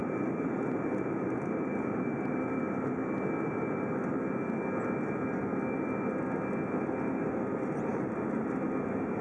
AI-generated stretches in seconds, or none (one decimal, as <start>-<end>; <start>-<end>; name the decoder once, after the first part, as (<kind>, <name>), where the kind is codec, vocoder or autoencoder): 0.0-2.6 (vocoder, BigVGAN v2); 7.9-8.4